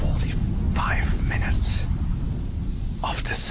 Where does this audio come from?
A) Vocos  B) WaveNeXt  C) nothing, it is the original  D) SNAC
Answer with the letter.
C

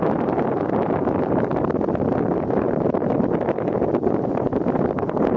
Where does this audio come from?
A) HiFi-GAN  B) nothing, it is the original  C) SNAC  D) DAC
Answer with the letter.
B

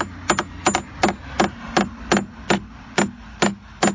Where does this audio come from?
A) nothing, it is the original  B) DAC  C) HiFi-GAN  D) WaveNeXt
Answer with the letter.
A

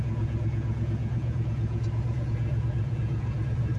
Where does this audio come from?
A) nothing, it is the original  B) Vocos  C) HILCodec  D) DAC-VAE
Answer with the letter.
B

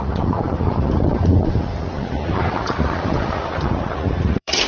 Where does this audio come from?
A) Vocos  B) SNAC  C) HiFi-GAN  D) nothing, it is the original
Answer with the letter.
A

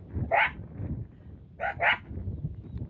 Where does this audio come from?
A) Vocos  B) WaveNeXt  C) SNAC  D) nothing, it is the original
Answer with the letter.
D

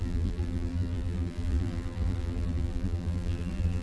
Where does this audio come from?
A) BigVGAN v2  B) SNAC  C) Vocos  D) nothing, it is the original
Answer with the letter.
A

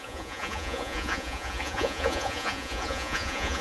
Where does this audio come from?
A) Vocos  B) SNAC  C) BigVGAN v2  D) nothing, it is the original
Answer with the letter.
A